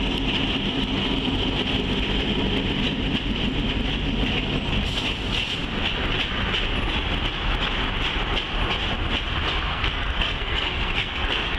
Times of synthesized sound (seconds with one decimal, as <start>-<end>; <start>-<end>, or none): 9.7-11.6

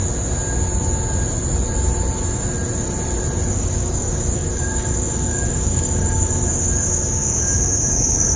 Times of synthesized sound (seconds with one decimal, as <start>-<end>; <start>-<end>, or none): 3.5-8.4

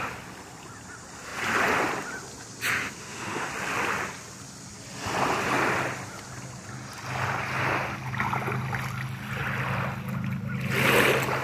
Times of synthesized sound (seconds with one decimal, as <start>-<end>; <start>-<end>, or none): 3.0-3.5

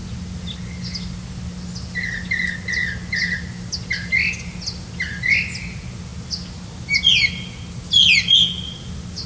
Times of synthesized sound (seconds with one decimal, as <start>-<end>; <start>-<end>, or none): none

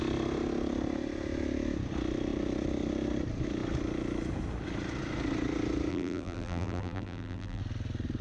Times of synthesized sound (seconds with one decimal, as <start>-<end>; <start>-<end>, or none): 5.9-7.6

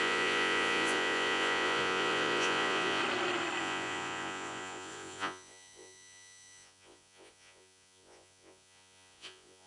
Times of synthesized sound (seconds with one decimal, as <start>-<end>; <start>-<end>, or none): 0.0-3.0; 3.6-9.7